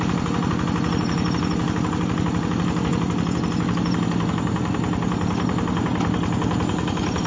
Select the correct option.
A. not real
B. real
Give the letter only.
B